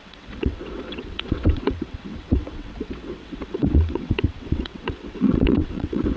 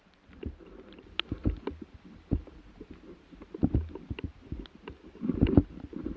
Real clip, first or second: second